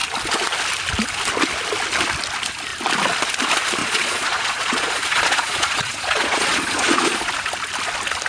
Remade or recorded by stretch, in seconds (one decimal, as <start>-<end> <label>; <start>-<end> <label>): 0.0-3.8 recorded; 3.8-7.3 remade; 7.3-8.3 recorded